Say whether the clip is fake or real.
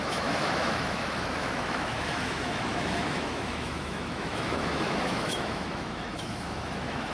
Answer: fake